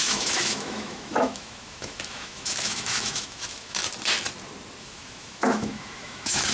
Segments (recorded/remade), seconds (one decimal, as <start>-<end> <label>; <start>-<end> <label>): 0.0-3.8 remade; 3.8-4.8 recorded; 4.8-6.5 remade